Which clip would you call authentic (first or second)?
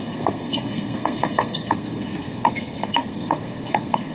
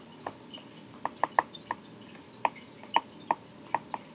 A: second